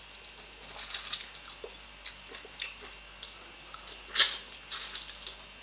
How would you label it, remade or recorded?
recorded